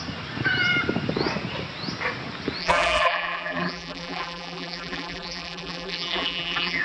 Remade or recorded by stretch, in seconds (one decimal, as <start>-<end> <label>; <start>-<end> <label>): 0.0-2.6 recorded; 2.6-6.8 remade